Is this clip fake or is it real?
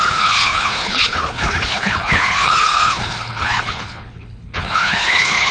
fake